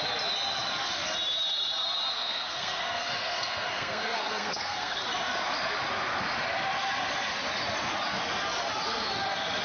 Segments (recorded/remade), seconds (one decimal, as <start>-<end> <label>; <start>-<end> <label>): 0.0-2.1 recorded; 2.1-5.0 remade; 5.0-9.6 recorded